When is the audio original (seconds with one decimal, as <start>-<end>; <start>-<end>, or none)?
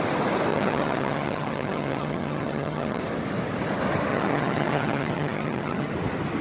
0.0-0.5; 3.0-4.1; 5.9-6.4